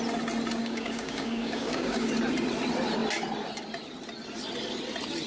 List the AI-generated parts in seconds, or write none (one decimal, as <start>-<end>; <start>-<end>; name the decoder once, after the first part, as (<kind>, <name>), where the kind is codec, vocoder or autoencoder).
0.6-2.1 (codec, DAC)